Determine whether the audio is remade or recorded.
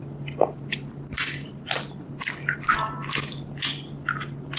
remade